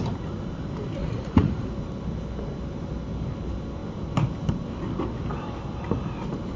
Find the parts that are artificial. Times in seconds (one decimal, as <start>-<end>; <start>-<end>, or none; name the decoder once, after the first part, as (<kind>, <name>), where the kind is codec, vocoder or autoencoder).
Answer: 1.0-1.7 (vocoder, Vocos)